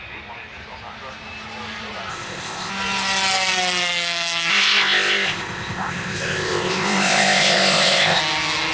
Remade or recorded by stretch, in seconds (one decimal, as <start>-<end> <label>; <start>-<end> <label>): 0.0-2.1 recorded; 2.1-2.7 remade; 2.7-4.5 recorded; 4.5-8.2 remade; 8.2-8.7 recorded